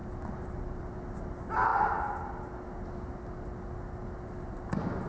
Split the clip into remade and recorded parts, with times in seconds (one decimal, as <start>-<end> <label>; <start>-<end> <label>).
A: 0.0-0.8 remade; 0.8-5.1 recorded